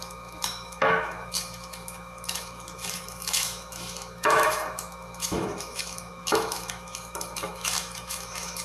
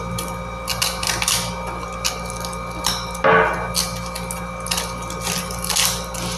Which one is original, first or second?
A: second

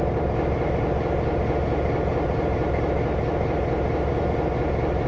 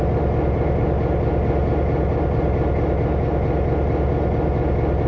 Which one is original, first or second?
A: second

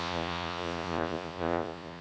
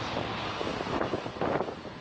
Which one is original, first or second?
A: second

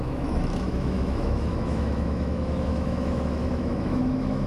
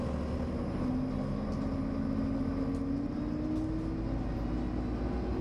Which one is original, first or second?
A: second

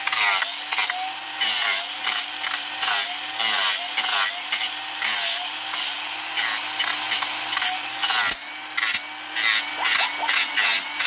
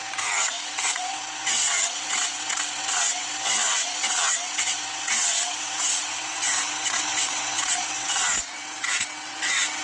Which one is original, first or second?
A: first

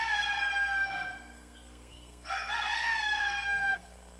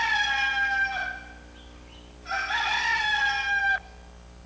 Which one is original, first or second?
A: second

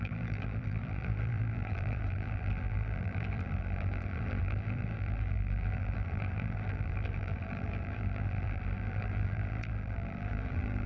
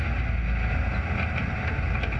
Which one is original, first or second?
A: second